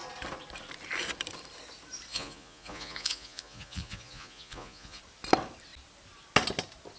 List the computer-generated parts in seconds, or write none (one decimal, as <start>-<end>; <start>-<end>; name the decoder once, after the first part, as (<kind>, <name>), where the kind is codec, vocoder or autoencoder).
2.1-5.0 (vocoder, Vocos)

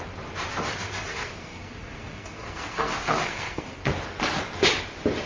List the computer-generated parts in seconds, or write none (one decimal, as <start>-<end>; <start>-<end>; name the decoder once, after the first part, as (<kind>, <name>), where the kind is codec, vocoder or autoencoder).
0.7-3.9 (codec, SNAC)

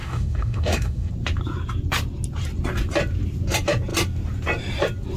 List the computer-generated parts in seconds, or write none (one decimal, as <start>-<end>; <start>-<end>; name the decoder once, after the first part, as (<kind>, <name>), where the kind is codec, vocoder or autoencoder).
0.0-1.1 (autoencoder, DAC-VAE)

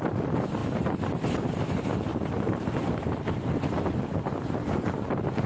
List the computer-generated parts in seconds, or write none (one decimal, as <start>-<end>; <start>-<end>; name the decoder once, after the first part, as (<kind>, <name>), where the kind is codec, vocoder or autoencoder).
2.1-3.8 (vocoder, BigVGAN v2)